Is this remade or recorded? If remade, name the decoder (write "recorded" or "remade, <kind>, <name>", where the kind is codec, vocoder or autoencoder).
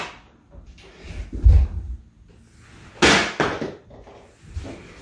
recorded